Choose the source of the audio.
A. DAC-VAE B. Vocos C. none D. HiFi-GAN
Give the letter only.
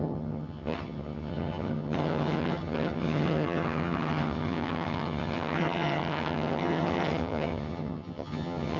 D